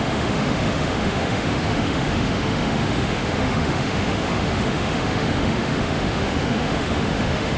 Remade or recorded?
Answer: remade